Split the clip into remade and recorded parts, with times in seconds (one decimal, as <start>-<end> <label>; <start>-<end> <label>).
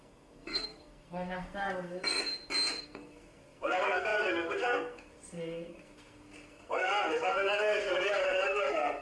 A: 0.0-2.3 remade; 2.3-2.8 recorded; 2.8-9.0 remade